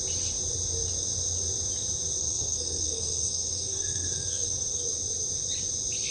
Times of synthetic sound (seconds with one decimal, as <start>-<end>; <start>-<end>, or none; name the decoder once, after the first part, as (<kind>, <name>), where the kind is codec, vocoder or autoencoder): 2.2-4.8 (codec, SNAC)